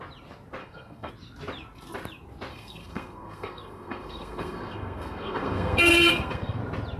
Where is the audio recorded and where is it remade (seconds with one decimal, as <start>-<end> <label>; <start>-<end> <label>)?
0.0-0.6 recorded; 0.6-1.1 remade; 1.1-2.5 recorded; 2.5-6.6 remade; 6.6-7.0 recorded